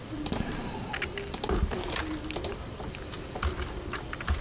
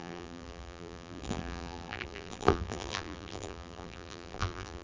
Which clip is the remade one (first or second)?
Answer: second